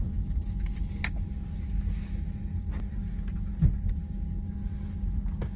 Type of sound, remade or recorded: recorded